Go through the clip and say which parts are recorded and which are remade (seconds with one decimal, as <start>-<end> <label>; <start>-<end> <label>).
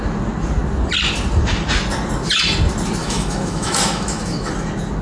0.0-3.0 recorded; 3.0-4.5 remade; 4.5-5.0 recorded